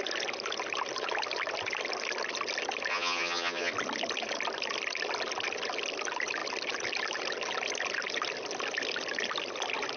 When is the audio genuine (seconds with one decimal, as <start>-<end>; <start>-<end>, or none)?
0.0-2.9; 3.7-10.0